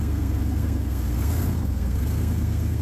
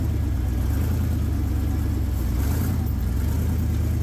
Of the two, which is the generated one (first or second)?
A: first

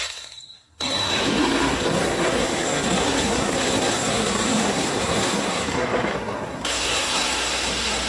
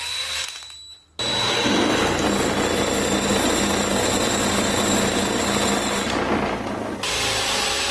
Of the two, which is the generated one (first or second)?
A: first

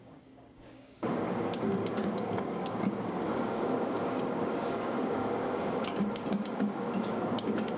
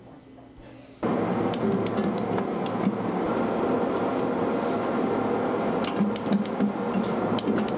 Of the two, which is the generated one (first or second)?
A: first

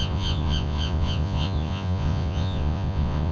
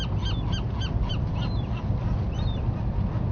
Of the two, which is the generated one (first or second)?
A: first